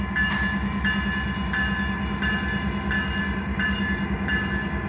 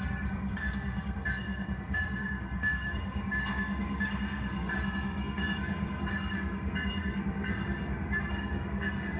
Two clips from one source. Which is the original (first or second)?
first